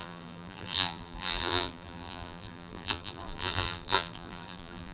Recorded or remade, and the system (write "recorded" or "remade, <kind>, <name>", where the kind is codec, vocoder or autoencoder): remade, vocoder, BigVGAN v2